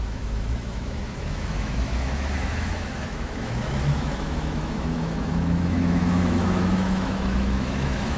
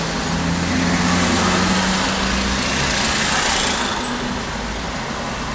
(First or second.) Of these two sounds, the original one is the second